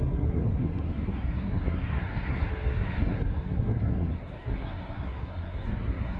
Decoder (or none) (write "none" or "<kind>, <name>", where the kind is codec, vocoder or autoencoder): codec, SNAC